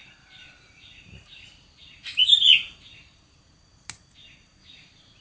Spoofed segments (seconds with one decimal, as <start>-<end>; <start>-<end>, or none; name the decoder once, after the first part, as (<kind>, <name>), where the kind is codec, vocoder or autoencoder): none